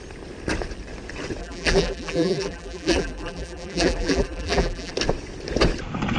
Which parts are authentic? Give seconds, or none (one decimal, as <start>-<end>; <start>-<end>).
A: 0.0-1.4; 4.9-6.2

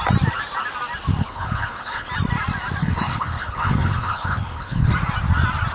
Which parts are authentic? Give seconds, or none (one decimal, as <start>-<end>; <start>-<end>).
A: 0.0-1.2; 2.1-2.8; 4.9-5.7

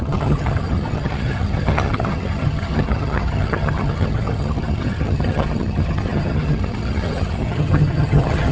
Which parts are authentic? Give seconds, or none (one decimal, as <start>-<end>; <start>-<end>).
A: none

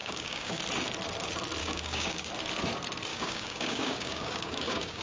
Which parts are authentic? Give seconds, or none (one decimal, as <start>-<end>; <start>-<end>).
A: 0.6-1.6; 2.3-3.1

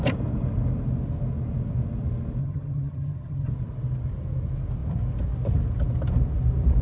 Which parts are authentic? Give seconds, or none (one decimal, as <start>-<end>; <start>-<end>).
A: 0.0-2.4; 3.5-6.8

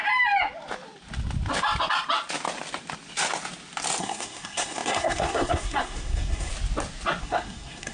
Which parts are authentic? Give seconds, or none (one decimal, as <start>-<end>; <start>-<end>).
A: 0.0-4.0; 6.5-7.2